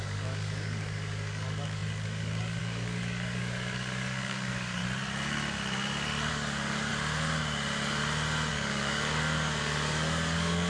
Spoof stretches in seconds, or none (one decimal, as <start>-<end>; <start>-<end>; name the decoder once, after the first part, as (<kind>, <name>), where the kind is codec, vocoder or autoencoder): 0.0-4.8 (codec, DAC); 6.3-6.9; 8.5-10.7